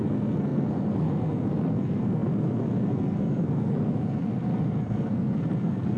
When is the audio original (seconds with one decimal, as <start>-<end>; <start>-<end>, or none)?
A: none